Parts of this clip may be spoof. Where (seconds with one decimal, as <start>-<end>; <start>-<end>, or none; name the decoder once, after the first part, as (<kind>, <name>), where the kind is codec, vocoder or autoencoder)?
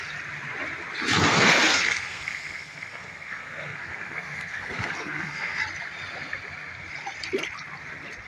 1.2-5.6 (codec, SNAC)